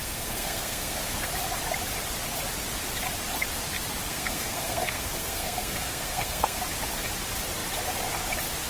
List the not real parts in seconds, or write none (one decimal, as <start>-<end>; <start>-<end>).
0.0-1.3; 4.0-6.6